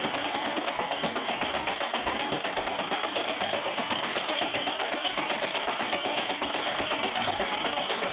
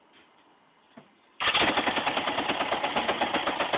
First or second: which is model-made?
first